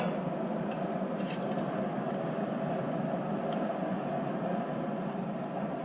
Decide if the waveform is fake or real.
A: fake